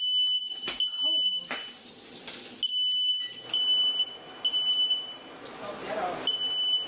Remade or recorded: recorded